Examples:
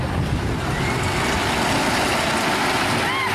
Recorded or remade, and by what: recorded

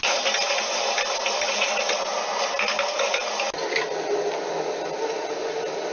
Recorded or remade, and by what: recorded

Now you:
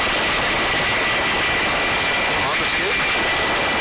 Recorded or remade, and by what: recorded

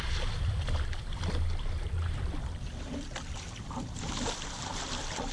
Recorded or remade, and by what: remade, vocoder, BigVGAN v2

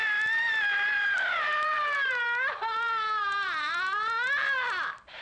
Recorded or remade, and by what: remade, vocoder, BigVGAN v2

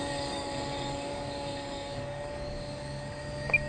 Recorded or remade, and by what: remade, codec, DAC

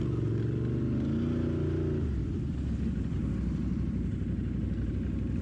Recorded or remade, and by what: recorded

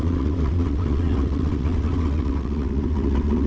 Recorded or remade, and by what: remade, vocoder, WaveNeXt